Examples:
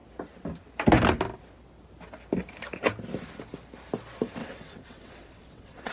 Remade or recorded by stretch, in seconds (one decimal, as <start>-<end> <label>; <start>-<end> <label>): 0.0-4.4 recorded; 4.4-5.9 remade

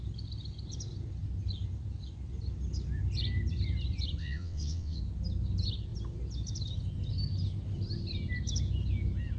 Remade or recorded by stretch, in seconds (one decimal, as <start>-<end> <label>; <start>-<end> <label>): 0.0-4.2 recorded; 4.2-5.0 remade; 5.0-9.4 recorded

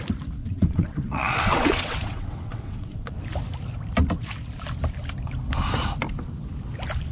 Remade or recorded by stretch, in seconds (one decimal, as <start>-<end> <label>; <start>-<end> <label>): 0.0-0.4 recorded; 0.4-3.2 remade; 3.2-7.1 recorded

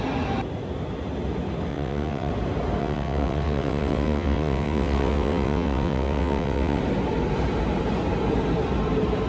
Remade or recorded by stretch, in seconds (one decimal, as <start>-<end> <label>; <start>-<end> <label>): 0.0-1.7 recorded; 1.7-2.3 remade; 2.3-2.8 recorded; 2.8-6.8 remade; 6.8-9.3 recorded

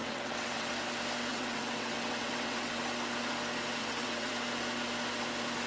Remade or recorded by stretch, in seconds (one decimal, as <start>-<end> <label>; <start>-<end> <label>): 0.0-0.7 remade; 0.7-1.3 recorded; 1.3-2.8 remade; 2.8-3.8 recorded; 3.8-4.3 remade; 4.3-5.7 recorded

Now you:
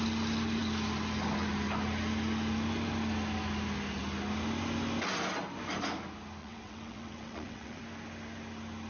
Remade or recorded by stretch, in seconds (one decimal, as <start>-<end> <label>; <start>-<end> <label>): 0.0-6.4 recorded; 6.4-7.8 remade; 7.8-8.9 recorded

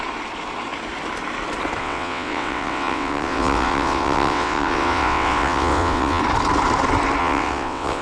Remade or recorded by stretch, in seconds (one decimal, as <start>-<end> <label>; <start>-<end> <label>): 0.0-1.8 recorded; 1.8-6.2 remade; 6.2-7.2 recorded; 7.2-8.0 remade